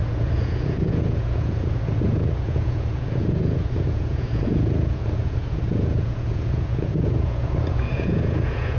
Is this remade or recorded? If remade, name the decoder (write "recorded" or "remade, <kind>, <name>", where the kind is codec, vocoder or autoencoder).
remade, vocoder, Vocos